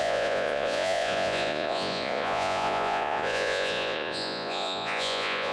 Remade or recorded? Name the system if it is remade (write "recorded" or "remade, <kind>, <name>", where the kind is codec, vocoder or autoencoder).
remade, vocoder, Vocos